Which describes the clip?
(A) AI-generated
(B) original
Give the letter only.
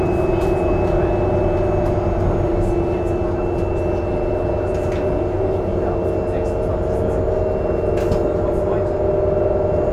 B